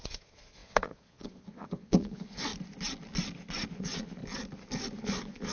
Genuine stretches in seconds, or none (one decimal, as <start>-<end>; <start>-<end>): 2.5-3.7; 4.2-5.0